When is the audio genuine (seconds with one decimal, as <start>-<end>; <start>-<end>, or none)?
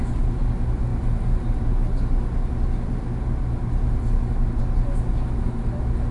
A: 0.0-6.1